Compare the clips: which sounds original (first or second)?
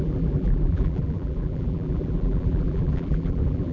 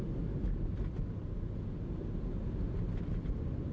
second